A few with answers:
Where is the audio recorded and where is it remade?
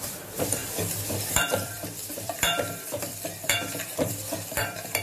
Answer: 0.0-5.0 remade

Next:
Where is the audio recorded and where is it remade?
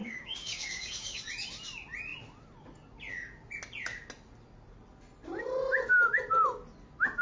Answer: 0.0-1.2 remade; 1.2-7.2 recorded